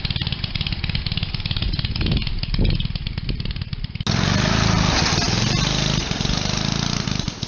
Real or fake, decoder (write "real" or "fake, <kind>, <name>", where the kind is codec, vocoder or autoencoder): real